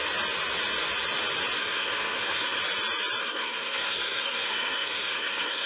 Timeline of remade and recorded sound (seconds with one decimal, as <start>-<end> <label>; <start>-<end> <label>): 0.0-1.6 recorded; 1.6-2.6 remade; 2.6-3.2 recorded; 3.2-5.7 remade